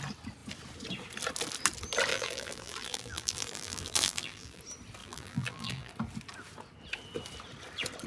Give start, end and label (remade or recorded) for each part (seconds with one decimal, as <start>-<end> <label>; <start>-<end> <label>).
0.0-2.1 recorded; 2.1-4.6 remade; 4.6-5.0 recorded; 5.0-5.9 remade; 5.9-8.1 recorded